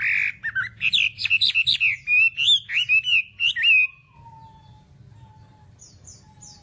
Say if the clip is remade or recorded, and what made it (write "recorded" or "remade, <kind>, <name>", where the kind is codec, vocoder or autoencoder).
recorded